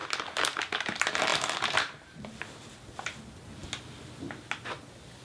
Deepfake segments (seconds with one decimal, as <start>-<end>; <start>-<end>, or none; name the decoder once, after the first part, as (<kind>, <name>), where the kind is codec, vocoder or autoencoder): 0.0-0.6 (vocoder, BigVGAN v2)